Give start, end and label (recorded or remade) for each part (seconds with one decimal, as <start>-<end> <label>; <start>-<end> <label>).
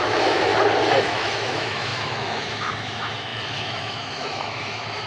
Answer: 0.0-0.5 remade; 0.5-1.0 recorded; 1.0-5.1 remade